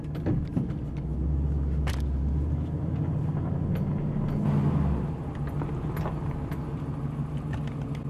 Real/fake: real